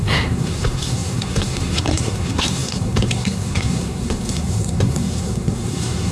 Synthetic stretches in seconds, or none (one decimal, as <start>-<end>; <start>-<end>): 0.0-6.1